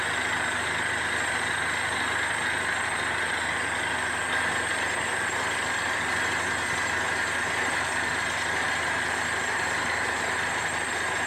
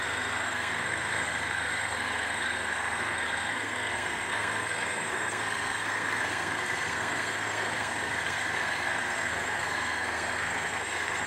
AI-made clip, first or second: second